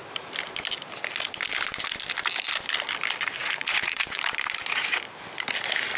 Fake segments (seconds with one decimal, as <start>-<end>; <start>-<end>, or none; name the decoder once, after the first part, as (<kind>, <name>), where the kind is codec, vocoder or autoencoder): 3.4-4.2 (vocoder, Vocos)